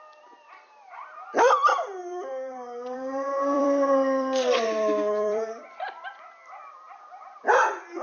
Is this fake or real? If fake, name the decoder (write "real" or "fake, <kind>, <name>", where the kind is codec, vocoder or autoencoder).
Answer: fake, vocoder, BigVGAN v2